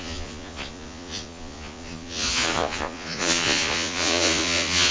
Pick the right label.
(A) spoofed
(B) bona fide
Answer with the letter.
A